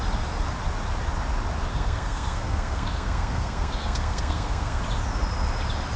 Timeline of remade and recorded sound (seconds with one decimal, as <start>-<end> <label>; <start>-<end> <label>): 0.0-1.7 recorded; 1.7-4.8 remade; 4.8-6.0 recorded

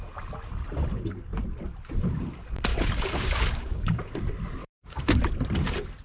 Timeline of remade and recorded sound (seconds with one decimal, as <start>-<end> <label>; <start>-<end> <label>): 0.0-2.7 recorded; 2.7-4.1 remade; 4.1-4.6 recorded; 4.6-5.2 remade; 5.2-6.0 recorded

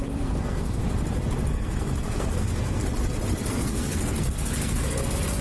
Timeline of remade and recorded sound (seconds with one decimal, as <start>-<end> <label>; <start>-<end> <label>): 0.0-0.8 remade; 0.8-1.5 recorded; 1.5-2.8 remade; 2.8-3.5 recorded; 3.5-5.4 remade